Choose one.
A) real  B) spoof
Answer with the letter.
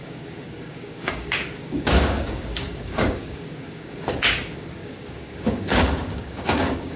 B